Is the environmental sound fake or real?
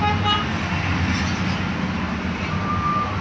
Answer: real